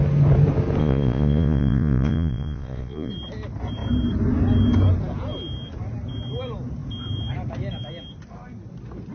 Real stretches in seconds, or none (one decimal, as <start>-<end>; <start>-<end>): 0.0-0.8; 3.1-9.1